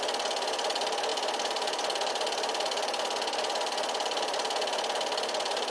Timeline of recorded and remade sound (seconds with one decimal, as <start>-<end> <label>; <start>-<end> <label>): 0.0-5.7 recorded